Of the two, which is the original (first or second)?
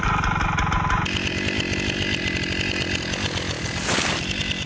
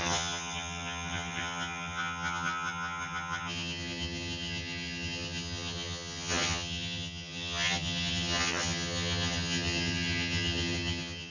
first